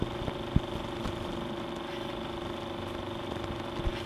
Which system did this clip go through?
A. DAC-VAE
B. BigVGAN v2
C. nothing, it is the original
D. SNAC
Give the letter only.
C